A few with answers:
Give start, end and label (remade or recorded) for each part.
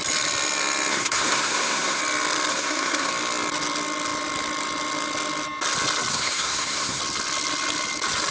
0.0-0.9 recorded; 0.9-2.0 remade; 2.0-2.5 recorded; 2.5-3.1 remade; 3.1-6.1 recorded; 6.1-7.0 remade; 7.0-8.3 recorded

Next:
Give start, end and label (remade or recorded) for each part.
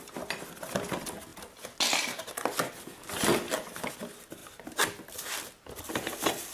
0.0-6.5 recorded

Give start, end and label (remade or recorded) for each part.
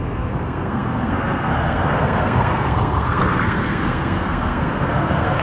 0.0-5.4 remade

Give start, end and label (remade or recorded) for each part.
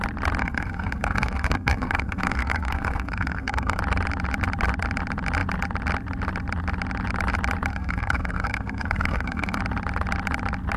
0.0-0.4 recorded; 0.4-3.8 remade; 3.8-7.7 recorded; 7.7-9.6 remade; 9.6-10.8 recorded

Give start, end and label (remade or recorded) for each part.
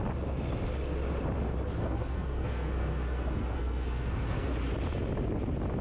0.0-1.8 recorded; 1.8-4.5 remade; 4.5-5.8 recorded